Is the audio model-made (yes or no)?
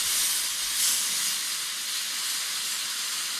no